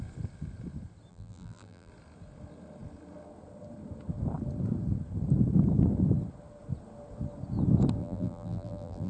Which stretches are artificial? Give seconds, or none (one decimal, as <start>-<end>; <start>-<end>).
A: 1.1-1.9; 8.0-9.1